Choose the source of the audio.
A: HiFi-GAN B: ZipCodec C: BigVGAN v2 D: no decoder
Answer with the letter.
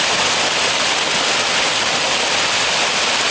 D